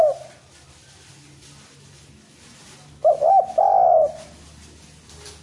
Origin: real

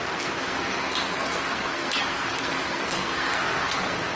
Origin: fake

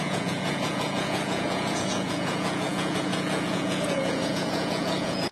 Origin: fake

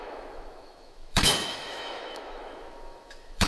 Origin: fake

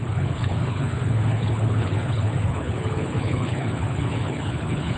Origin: fake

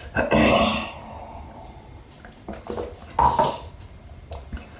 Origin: real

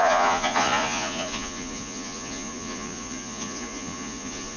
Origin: fake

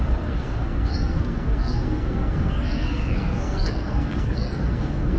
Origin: fake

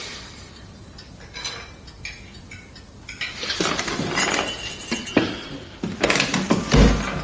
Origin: real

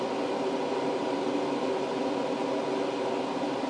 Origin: real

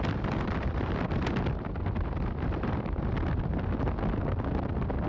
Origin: real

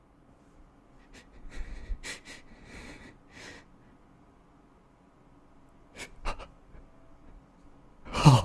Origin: real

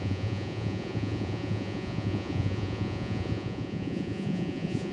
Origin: fake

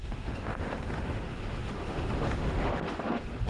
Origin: fake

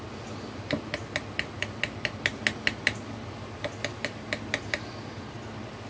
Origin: real